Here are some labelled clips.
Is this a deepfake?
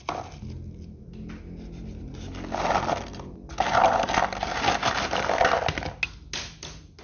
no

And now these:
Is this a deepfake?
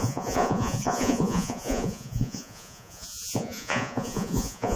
yes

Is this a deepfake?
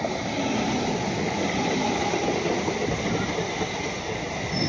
no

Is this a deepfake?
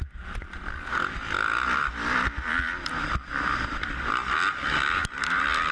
no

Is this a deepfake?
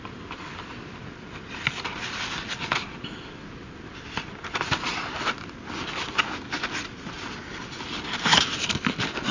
no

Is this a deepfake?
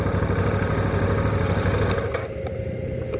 no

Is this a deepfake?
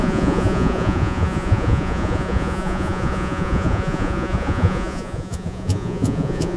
yes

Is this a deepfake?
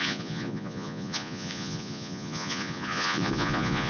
yes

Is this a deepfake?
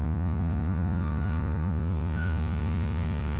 yes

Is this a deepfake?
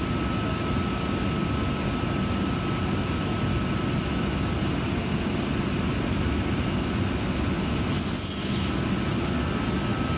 no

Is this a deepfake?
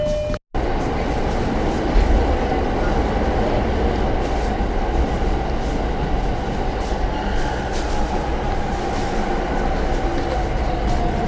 no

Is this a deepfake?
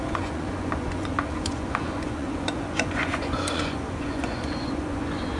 yes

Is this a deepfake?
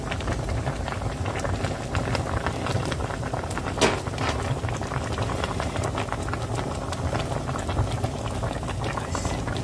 no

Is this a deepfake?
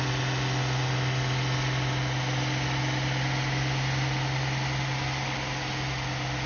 no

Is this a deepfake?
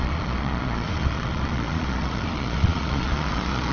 yes